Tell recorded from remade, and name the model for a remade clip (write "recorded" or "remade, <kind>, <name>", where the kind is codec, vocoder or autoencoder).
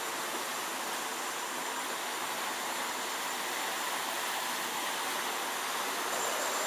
recorded